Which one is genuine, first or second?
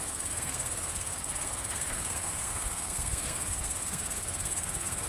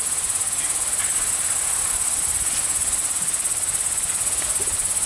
second